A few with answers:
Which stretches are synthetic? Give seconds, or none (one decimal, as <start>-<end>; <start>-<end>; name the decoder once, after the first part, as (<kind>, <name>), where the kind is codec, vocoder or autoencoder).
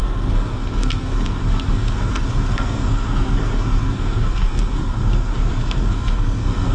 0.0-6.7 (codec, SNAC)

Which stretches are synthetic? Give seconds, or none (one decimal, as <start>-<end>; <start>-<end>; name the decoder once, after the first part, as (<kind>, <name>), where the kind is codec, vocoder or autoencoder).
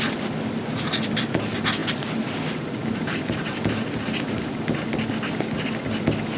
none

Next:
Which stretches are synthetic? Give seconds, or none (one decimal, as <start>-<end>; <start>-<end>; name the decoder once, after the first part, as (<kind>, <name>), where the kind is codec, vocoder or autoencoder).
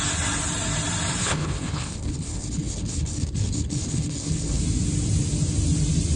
1.2-4.6 (codec, HILCodec)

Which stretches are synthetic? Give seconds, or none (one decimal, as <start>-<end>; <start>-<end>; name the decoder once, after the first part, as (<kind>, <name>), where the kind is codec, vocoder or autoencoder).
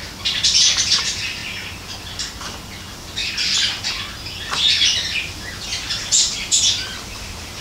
3.2-3.8 (vocoder, BigVGAN v2); 5.7-6.6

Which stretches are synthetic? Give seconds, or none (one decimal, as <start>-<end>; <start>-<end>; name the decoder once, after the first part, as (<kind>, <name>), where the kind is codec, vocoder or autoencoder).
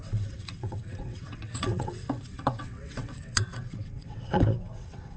0.0-5.2 (vocoder, WaveNeXt)